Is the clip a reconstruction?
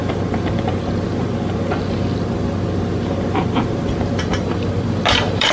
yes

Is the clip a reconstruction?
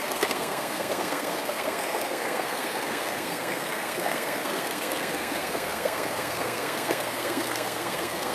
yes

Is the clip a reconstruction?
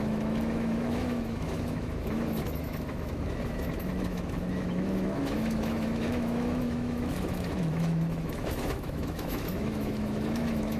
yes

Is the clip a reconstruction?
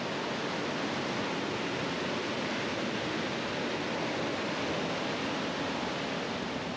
no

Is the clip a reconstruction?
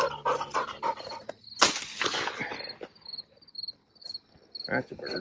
no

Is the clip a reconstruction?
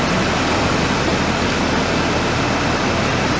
no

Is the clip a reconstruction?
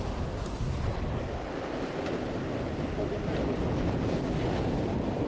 no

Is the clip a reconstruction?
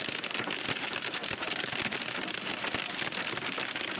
no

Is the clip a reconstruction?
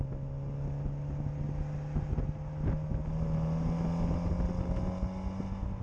no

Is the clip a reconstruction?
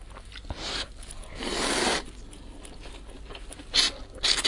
no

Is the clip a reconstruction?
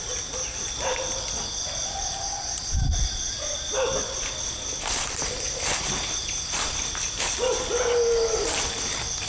no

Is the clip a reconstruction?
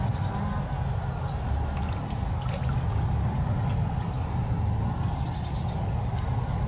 no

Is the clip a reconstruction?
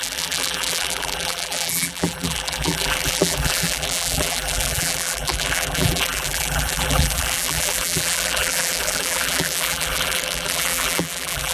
yes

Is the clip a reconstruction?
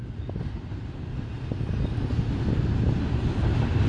no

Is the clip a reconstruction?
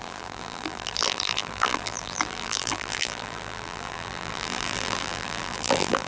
yes